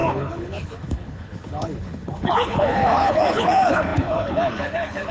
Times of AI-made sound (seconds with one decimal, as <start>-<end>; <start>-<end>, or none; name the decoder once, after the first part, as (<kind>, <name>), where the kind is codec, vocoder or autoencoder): 0.0-5.1 (codec, HILCodec)